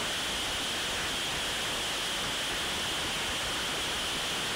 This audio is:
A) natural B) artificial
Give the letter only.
A